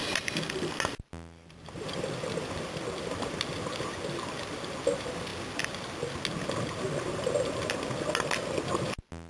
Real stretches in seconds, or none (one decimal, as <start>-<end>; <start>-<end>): 0.0-9.3